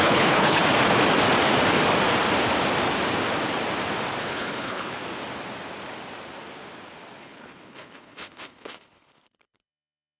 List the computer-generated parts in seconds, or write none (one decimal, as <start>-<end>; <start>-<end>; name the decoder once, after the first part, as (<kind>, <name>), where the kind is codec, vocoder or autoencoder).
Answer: 0.0-0.6 (codec, HILCodec); 4.2-5.0; 7.2-10.2